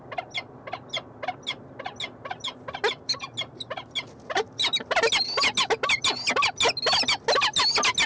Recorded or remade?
recorded